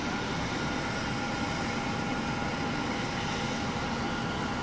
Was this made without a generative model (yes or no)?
yes